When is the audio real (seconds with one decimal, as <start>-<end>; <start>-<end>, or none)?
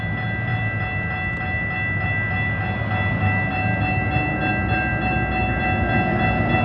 0.0-6.6